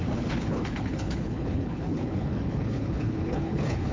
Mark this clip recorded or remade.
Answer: remade